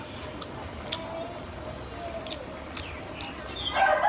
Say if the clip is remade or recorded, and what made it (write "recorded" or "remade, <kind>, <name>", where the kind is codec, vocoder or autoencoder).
recorded